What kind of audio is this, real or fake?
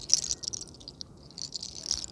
real